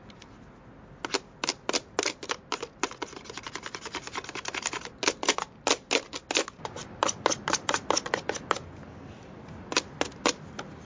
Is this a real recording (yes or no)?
yes